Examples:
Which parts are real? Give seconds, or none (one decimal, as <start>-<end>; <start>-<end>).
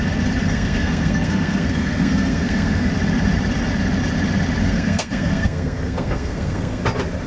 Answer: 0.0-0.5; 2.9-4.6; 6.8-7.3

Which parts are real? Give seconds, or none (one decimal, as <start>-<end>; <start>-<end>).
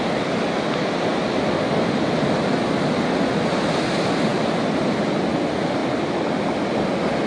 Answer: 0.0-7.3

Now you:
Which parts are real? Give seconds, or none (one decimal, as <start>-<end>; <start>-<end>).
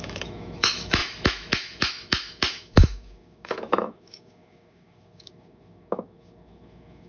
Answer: none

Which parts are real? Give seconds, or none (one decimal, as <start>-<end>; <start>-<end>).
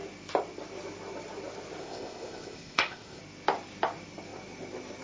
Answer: 0.0-1.8; 3.2-5.0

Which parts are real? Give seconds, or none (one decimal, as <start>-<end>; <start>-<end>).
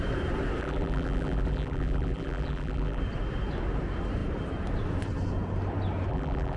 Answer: 0.0-0.6; 3.0-6.1